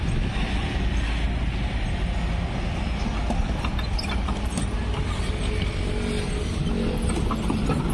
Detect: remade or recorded recorded